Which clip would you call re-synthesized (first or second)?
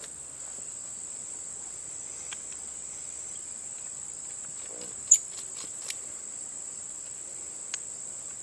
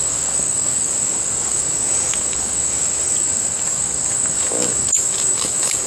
second